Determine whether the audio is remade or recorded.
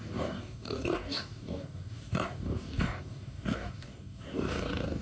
remade